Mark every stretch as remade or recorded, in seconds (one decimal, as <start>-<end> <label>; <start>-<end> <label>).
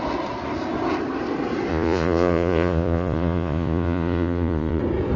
0.0-1.7 recorded; 1.7-4.8 remade; 4.8-5.2 recorded